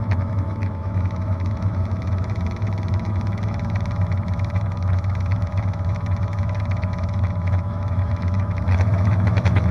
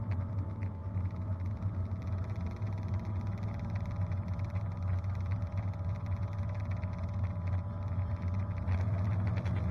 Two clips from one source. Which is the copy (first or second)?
first